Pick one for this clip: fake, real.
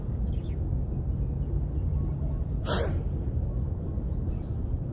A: real